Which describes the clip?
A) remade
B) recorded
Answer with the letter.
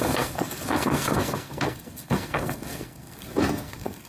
A